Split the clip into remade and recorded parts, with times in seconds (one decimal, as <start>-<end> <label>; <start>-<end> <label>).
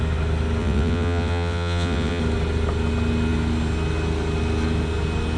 0.0-0.6 recorded; 0.6-2.2 remade; 2.2-5.4 recorded